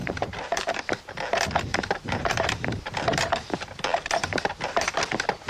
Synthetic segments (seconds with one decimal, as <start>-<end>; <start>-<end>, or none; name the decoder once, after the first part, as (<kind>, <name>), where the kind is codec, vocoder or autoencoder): 0.0-1.0 (vocoder, BigVGAN v2); 1.7-5.0